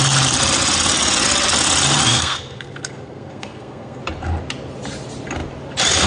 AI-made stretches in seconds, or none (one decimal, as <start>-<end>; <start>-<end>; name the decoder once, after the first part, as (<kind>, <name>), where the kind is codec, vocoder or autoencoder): 2.1-4.0 (codec, SNAC)

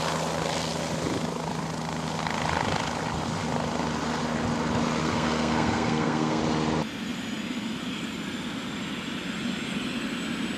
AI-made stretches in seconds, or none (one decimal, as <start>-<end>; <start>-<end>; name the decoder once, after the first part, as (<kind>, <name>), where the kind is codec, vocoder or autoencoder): 5.0-6.4 (codec, SNAC)

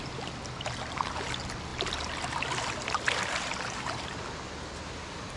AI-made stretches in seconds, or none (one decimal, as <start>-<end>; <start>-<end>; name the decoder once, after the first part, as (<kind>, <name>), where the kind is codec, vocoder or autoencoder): none

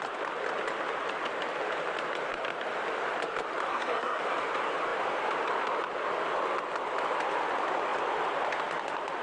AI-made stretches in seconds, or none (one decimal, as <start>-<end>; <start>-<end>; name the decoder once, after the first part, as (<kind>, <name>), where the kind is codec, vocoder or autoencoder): 3.7-4.2 (codec, SNAC)

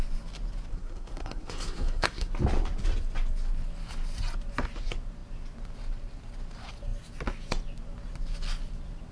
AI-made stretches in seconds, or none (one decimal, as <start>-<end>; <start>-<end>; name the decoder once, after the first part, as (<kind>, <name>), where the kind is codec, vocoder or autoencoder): 0.7-2.3 (codec, SNAC)

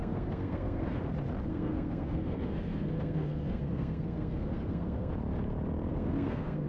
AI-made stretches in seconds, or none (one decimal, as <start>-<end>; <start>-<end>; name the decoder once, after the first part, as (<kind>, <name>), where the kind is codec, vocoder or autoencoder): 0.0-1.0 (codec, SNAC); 1.5-5.1; 5.9-6.7